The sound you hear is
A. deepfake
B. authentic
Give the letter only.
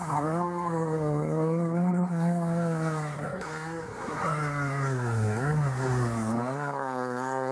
A